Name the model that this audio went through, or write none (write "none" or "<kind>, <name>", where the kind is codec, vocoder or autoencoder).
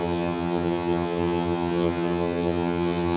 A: vocoder, HiFi-GAN